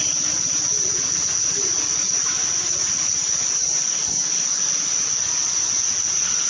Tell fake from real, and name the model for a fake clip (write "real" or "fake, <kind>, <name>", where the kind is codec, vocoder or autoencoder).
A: real